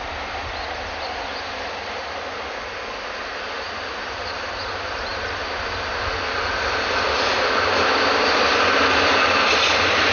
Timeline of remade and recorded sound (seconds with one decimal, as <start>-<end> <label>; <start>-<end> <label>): 0.0-10.1 recorded